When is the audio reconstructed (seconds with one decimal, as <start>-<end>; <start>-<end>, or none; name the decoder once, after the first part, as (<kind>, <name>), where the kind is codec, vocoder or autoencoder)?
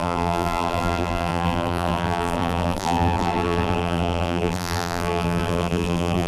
0.0-6.3 (vocoder, BigVGAN v2)